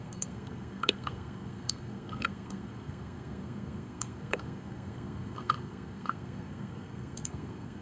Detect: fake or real fake